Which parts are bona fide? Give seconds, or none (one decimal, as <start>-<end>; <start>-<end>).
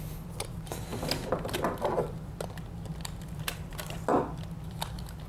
0.0-5.3